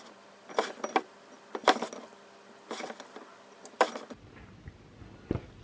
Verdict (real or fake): real